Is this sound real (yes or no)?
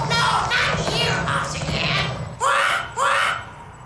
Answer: yes